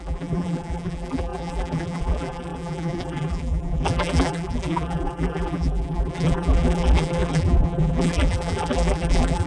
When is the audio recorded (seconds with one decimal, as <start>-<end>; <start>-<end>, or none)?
none